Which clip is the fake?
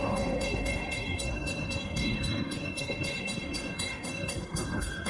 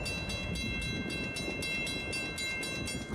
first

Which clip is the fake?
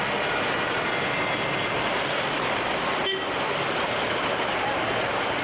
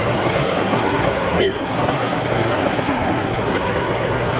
second